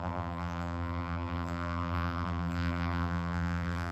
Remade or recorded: remade